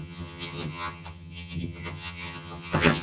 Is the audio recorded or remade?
remade